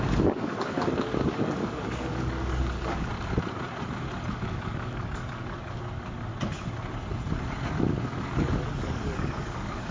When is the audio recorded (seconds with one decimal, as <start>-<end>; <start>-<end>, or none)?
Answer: 3.1-4.3; 6.3-7.8